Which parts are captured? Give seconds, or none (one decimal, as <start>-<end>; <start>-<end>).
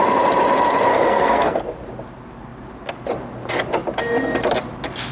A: 0.0-0.9; 1.6-5.1